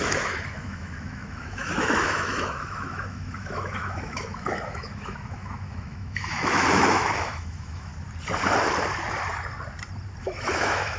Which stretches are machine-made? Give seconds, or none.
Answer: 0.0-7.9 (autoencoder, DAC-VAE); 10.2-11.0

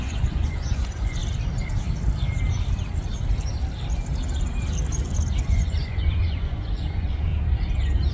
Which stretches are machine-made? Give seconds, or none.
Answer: 0.0-1.2 (vocoder, Vocos); 5.4-7.3

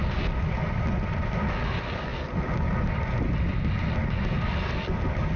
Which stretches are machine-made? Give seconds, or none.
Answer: none

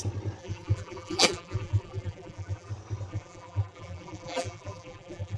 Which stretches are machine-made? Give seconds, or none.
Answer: 0.4-2.7 (vocoder, BigVGAN v2); 3.1-5.4

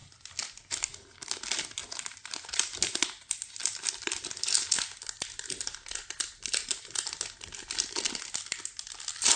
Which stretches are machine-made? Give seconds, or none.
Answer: none

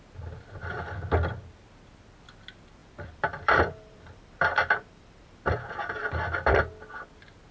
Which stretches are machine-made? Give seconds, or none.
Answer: 2.8-5.4 (vocoder, BigVGAN v2)